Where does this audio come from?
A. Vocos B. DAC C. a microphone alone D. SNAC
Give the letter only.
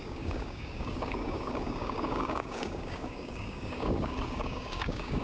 B